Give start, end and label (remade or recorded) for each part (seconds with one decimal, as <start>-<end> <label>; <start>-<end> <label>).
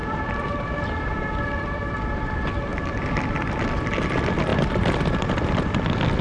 0.0-1.9 remade; 1.9-2.7 recorded; 2.7-3.5 remade; 3.5-6.2 recorded